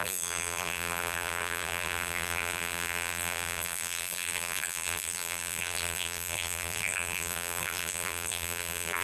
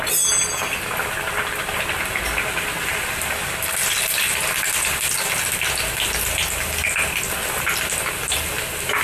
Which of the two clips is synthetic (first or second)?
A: first